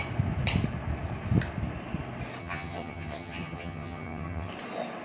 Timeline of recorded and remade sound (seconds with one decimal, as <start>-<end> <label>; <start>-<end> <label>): 0.0-2.4 recorded; 2.4-4.5 remade; 4.5-5.0 recorded